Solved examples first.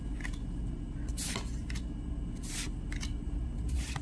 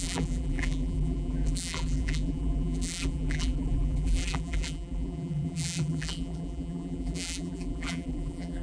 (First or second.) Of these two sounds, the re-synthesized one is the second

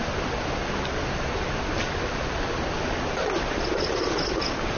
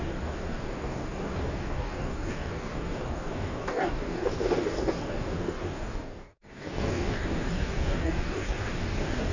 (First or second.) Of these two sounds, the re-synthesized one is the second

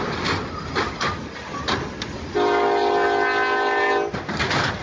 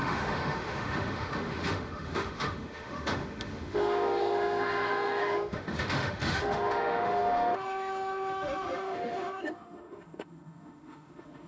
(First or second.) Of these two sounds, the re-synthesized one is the second